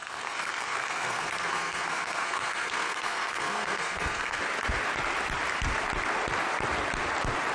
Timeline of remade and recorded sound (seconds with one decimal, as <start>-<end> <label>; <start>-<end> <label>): 0.0-4.4 remade; 4.4-7.5 recorded